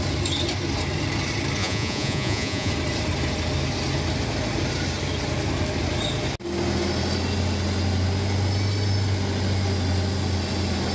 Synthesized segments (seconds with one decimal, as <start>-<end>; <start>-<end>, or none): 1.6-2.7